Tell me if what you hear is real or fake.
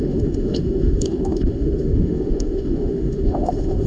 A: fake